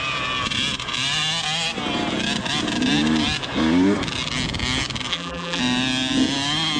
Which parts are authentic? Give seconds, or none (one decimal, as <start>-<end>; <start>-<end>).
0.0-5.1; 5.6-6.8